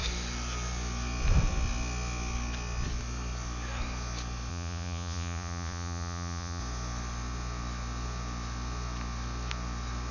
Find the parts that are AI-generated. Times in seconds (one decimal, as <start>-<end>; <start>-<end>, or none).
4.5-6.6